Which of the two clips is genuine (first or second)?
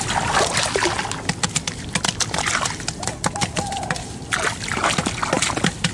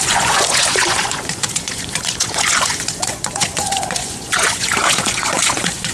first